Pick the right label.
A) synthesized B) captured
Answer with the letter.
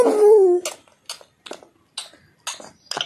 B